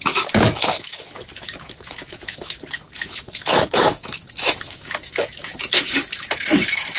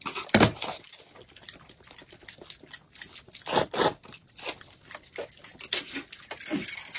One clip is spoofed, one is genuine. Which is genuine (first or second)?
second